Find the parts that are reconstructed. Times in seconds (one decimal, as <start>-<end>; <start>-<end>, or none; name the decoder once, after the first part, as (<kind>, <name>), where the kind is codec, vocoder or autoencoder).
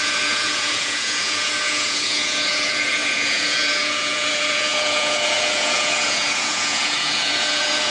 0.0-7.9 (vocoder, Vocos)